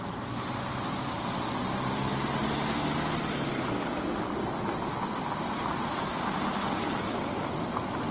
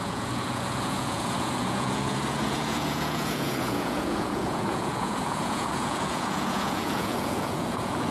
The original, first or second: first